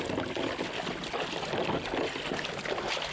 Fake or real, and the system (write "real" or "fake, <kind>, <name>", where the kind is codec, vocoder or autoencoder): real